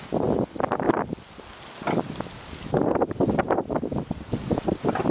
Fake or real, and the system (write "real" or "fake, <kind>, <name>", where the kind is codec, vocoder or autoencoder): real